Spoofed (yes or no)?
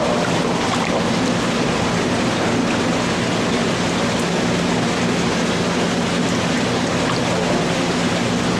no